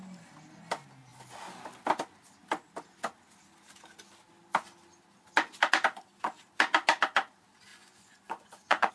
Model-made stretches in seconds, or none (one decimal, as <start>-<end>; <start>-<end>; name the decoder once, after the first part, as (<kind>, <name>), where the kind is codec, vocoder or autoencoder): 7.7-8.9 (vocoder, Vocos)